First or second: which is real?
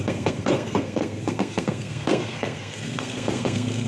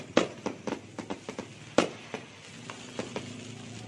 second